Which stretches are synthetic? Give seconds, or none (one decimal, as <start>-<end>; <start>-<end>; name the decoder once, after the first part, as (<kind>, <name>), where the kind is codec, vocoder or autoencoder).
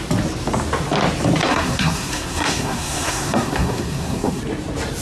1.4-4.4 (codec, SNAC)